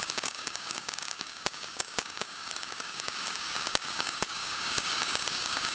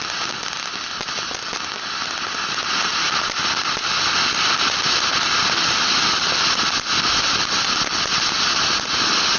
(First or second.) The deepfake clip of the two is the first